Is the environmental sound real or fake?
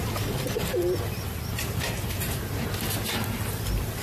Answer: real